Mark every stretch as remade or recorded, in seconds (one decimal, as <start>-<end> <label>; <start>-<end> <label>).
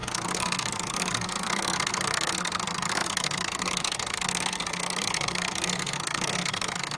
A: 0.0-7.0 remade